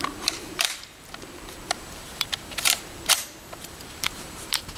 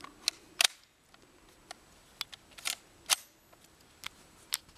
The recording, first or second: second